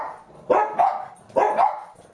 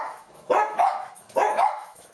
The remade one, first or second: second